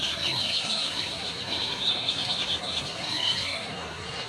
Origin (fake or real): fake